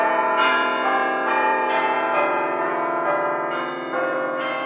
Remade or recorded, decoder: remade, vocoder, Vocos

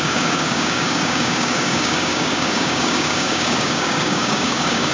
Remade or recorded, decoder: remade, codec, DAC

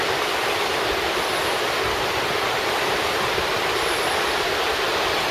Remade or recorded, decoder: recorded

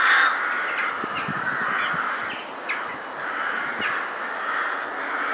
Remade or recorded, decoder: recorded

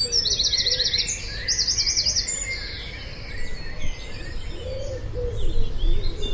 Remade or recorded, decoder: recorded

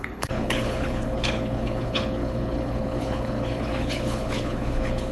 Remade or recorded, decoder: remade, codec, HILCodec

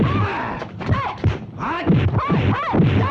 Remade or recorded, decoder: recorded